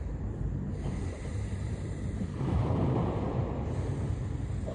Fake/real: fake